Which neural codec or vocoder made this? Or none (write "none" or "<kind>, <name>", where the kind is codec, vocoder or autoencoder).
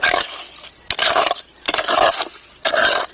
none